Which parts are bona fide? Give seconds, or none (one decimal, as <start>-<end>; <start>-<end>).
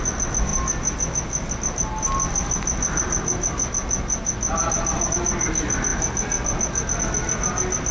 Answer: 0.0-7.9